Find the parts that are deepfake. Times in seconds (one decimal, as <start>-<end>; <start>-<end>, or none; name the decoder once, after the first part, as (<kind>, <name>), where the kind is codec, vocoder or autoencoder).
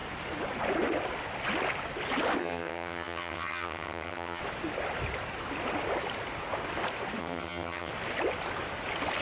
2.4-4.4 (vocoder, HiFi-GAN); 7.2-7.9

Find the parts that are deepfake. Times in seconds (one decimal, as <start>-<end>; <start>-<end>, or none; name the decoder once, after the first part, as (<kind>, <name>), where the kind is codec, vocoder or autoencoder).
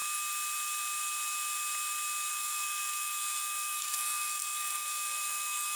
2.3-5.8 (codec, SNAC)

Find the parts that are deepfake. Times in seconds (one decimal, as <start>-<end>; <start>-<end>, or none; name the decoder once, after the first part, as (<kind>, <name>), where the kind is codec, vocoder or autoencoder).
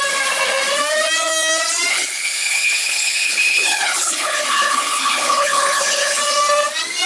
1.9-6.2 (codec, HILCodec)